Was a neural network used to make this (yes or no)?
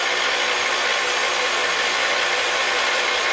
no